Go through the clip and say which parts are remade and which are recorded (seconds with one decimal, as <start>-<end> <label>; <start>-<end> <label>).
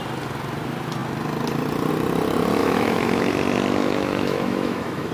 0.0-2.6 recorded; 2.6-3.3 remade; 3.3-3.8 recorded; 3.8-5.1 remade